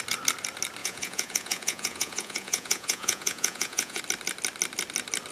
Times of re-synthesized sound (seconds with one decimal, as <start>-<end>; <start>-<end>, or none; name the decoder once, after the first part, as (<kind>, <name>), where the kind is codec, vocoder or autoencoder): 0.8-4.0 (vocoder, Vocos)